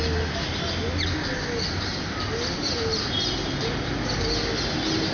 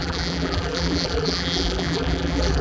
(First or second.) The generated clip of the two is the second